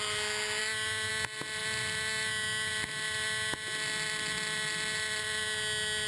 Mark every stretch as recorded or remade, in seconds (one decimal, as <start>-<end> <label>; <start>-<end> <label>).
0.0-6.1 recorded